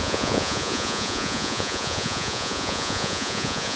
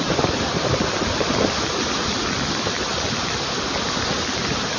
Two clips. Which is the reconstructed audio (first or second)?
first